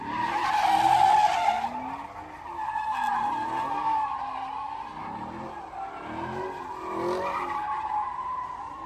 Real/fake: real